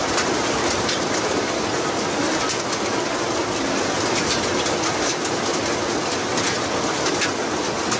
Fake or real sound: real